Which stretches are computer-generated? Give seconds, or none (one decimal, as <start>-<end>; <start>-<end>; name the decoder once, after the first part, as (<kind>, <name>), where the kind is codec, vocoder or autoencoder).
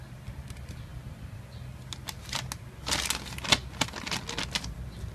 none